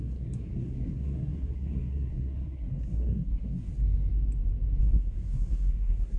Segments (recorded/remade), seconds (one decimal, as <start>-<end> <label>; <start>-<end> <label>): 0.0-3.7 remade; 3.7-4.8 recorded; 4.8-6.2 remade